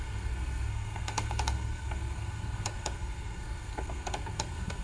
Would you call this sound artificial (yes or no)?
yes